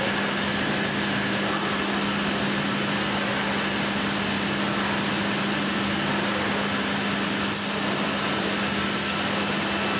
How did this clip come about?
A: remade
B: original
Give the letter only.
B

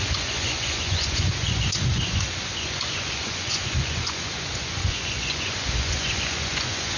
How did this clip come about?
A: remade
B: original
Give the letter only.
A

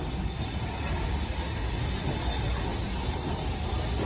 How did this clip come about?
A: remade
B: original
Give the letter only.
B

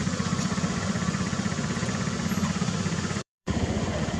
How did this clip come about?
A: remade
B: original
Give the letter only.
A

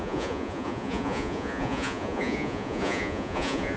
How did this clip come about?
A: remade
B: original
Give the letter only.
A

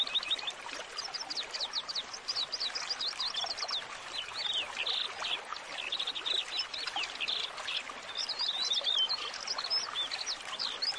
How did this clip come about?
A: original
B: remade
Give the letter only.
A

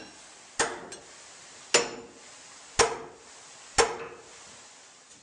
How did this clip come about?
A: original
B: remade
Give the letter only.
A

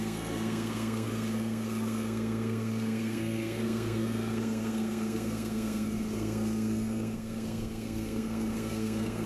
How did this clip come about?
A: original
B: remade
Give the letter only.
B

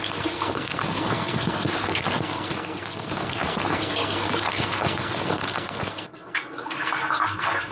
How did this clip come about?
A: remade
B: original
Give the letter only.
A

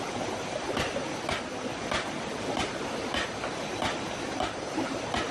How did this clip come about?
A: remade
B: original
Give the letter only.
B